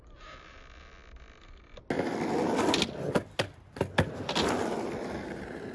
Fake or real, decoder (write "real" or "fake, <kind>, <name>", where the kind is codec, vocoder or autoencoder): real